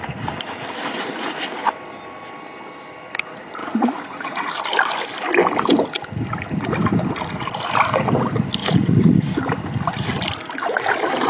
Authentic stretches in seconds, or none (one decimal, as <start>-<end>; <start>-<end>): 0.0-3.6; 4.5-8.6; 9.2-11.3